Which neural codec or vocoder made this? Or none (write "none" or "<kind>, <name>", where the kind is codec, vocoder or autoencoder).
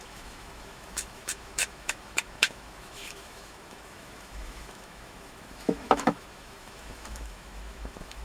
autoencoder, DAC-VAE